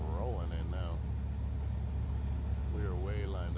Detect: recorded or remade recorded